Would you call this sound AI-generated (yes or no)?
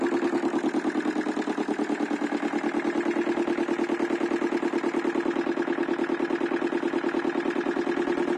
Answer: no